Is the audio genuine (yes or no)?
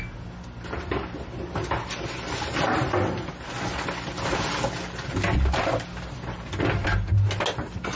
yes